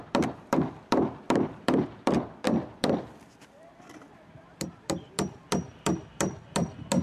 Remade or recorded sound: remade